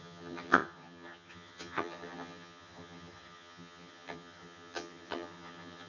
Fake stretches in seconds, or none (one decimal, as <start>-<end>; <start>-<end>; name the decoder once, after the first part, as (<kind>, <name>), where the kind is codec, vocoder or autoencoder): 0.0-5.9 (vocoder, HiFi-GAN)

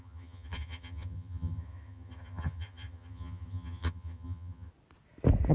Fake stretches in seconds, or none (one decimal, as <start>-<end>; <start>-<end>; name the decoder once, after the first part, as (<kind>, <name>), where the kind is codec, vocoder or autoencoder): 0.0-4.7 (vocoder, HiFi-GAN)

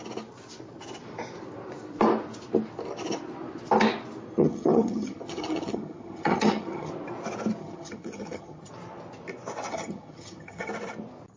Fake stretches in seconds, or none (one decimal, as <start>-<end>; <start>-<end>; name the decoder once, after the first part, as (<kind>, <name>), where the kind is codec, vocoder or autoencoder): 4.4-6.9 (vocoder, HiFi-GAN); 7.6-8.7; 9.7-10.7